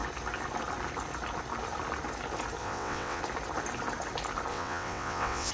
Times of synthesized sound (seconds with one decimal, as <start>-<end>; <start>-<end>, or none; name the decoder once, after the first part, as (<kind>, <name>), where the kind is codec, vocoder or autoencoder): 2.6-3.2 (vocoder, WaveNeXt); 4.5-5.5